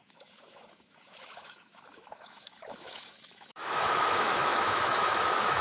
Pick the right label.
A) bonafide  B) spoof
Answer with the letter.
B